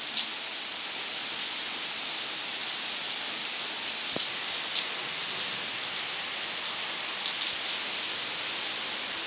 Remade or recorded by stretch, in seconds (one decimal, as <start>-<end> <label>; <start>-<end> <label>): 0.0-9.3 recorded

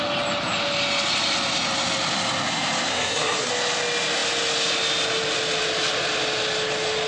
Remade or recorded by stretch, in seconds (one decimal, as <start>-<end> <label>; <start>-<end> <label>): 0.0-2.9 recorded; 2.9-3.5 remade; 3.5-7.1 recorded

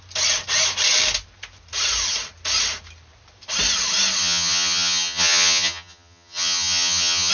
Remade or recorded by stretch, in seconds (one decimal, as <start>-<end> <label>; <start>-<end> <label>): 0.0-4.2 recorded; 4.2-7.3 remade

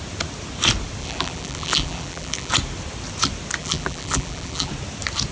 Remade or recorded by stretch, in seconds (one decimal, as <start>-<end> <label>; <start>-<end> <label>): 0.0-1.0 recorded; 1.0-2.5 remade; 2.5-3.6 recorded; 3.6-4.7 remade; 4.7-5.3 recorded